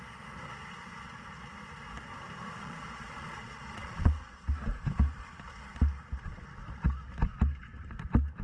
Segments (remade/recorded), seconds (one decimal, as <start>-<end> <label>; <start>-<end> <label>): 0.0-2.6 recorded; 2.6-4.5 remade; 4.5-8.4 recorded